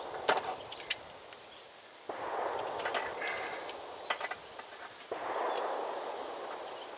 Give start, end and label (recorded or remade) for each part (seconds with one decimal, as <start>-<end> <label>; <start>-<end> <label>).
0.0-7.0 recorded